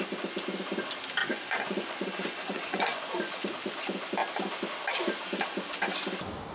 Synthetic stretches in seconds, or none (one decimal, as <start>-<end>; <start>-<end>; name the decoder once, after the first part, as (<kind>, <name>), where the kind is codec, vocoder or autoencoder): 1.2-3.5 (vocoder, Vocos)